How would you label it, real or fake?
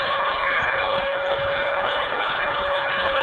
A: fake